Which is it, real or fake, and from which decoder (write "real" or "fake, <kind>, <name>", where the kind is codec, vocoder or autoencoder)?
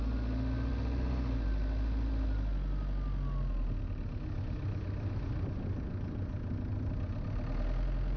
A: real